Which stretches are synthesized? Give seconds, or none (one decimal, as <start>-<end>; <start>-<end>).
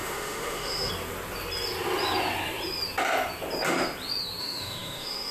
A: 0.0-0.9; 4.4-5.3